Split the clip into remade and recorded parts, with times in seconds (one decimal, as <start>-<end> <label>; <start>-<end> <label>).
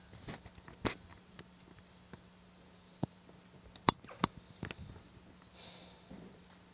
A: 0.0-6.7 recorded